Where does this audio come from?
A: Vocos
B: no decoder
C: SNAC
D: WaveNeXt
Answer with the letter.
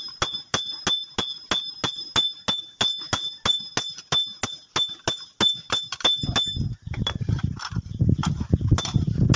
B